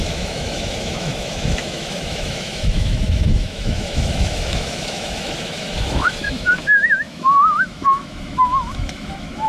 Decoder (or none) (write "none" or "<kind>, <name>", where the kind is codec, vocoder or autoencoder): autoencoder, DAC-VAE